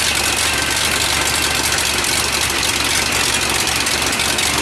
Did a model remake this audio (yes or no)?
no